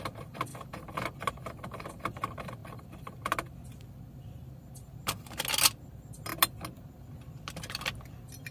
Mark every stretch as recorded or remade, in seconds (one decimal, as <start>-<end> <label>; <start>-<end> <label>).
0.0-8.5 recorded